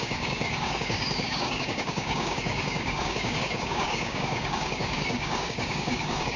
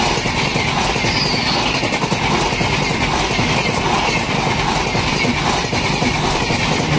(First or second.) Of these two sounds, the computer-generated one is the first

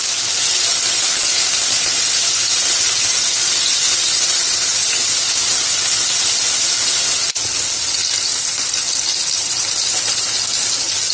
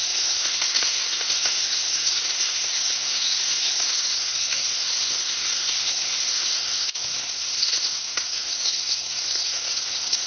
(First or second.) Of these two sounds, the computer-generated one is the second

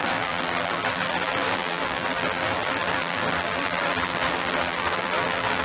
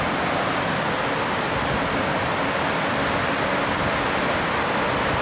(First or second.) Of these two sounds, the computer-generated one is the first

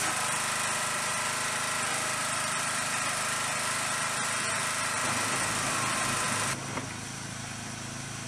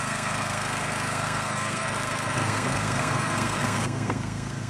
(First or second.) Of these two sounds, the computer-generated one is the second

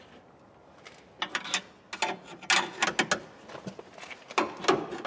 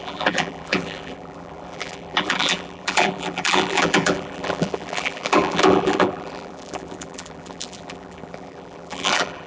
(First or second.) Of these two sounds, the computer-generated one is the second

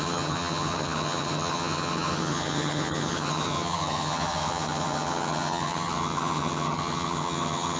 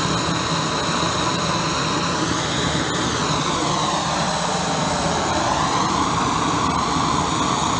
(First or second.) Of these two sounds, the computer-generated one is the first